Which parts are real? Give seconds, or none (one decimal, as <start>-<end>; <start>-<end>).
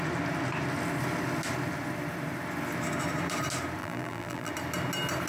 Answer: 0.0-3.8; 4.5-5.3